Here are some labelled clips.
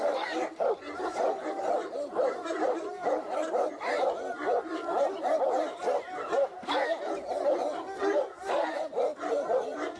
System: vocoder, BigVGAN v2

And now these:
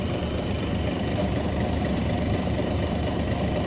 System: vocoder, BigVGAN v2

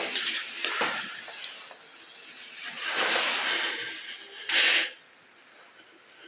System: none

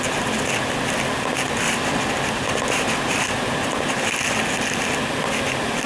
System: none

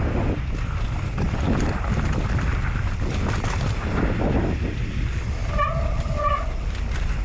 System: none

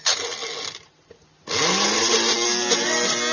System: none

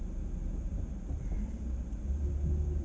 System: none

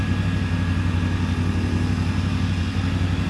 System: none